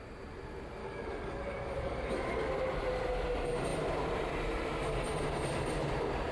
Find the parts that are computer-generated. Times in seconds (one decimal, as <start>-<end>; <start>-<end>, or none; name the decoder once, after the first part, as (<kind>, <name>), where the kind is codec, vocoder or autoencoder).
0.8-2.5 (codec, DAC)